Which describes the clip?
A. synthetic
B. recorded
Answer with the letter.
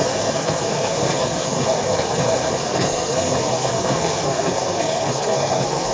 A